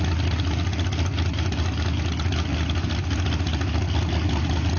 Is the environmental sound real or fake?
real